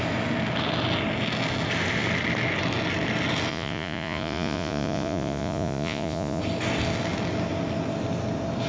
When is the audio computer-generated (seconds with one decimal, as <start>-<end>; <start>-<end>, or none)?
3.5-6.4